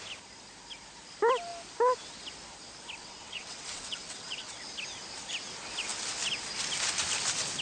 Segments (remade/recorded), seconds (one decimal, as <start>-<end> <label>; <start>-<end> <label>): 0.0-3.0 recorded; 3.0-4.6 remade; 4.6-7.6 recorded